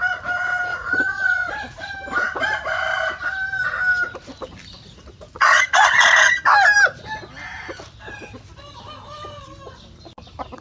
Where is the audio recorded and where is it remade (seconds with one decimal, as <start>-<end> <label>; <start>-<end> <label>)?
0.0-0.7 recorded; 0.7-1.9 remade; 1.9-4.9 recorded; 4.9-6.4 remade; 6.4-10.6 recorded